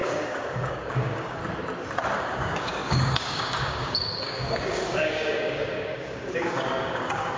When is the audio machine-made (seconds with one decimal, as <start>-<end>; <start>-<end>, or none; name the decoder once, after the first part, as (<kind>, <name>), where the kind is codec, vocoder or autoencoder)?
0.0-1.4 (codec, DAC); 2.2-7.4